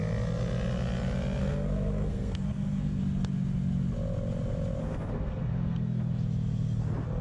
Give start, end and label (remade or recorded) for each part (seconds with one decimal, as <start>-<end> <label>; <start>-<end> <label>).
0.0-1.4 recorded; 1.4-3.0 remade; 3.0-4.8 recorded; 4.8-6.1 remade; 6.1-7.2 recorded